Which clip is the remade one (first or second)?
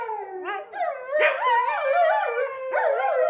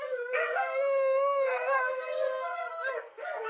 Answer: second